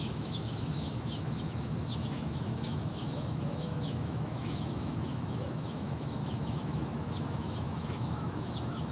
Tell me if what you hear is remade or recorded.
remade